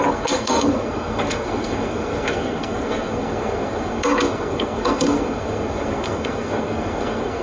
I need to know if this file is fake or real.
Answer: fake